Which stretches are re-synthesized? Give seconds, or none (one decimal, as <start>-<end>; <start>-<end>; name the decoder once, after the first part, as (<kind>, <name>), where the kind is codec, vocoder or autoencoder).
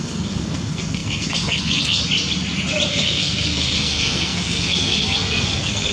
0.0-2.0 (codec, SNAC); 2.9-5.9